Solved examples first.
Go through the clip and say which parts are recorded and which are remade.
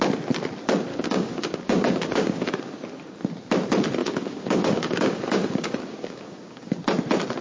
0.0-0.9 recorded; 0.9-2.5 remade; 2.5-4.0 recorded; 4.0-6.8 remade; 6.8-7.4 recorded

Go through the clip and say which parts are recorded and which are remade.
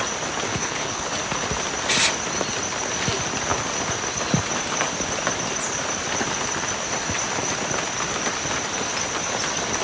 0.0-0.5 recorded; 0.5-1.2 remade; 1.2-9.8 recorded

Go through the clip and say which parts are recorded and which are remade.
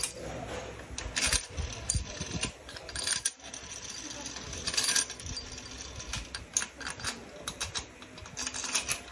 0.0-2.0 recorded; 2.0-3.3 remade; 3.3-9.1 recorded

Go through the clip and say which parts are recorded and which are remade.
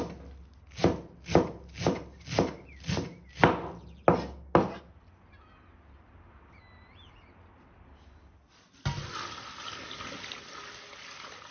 0.0-11.5 recorded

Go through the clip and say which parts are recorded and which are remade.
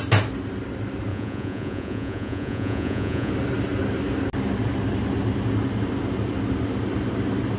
0.0-1.1 recorded; 1.1-3.3 remade; 3.3-7.6 recorded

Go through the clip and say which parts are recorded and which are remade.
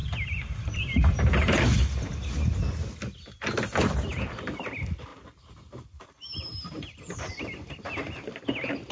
0.0-2.6 remade; 2.6-5.1 recorded; 5.1-7.9 remade; 7.9-8.9 recorded